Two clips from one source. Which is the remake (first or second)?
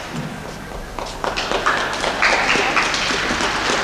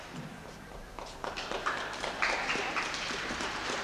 second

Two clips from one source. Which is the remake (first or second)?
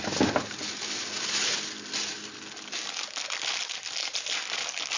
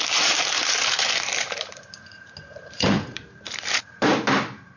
second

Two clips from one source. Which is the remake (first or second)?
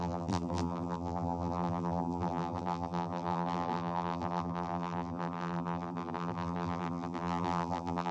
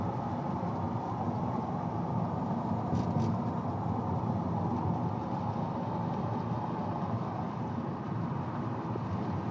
first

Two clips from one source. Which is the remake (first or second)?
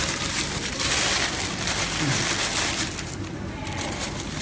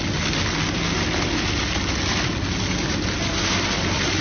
first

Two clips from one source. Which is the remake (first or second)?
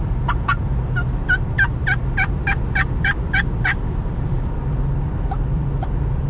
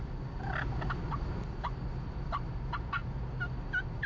first